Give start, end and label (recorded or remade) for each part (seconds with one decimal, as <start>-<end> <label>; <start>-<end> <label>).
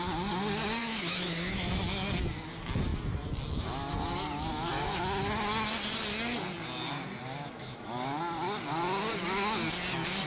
0.0-0.8 recorded; 0.8-1.7 remade; 1.7-7.2 recorded; 7.2-8.2 remade; 8.2-10.3 recorded